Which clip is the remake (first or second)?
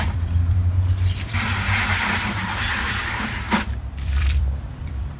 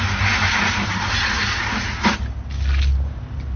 first